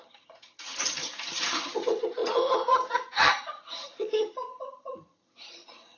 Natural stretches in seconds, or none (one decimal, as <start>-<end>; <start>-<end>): none